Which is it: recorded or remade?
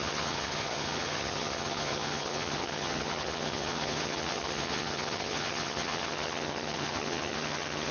remade